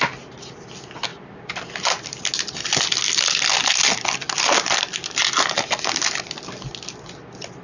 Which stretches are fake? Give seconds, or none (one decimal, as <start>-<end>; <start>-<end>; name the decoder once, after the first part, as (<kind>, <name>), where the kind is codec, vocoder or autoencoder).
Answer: none